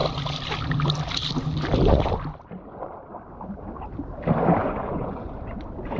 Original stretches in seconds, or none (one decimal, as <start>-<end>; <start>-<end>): 0.0-4.6; 5.4-6.0